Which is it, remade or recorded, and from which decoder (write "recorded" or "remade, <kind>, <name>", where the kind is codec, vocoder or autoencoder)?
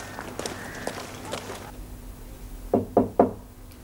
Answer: recorded